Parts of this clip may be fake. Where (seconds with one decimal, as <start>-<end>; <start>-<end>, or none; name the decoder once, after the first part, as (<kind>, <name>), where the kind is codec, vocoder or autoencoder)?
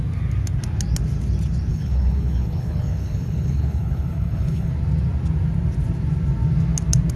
1.7-4.7 (codec, HILCodec)